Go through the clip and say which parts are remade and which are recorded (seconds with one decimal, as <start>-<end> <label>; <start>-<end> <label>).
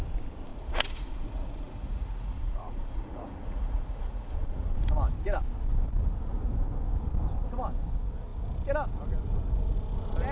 0.0-0.5 recorded; 0.5-4.7 remade; 4.7-10.3 recorded